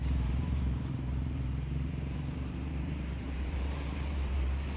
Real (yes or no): no